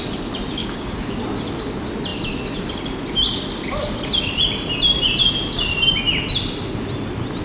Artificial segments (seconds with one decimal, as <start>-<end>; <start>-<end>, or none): 0.6-1.2